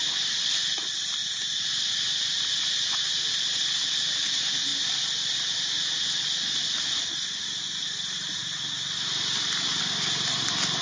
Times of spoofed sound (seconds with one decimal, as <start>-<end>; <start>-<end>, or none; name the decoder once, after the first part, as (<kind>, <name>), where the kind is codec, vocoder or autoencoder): none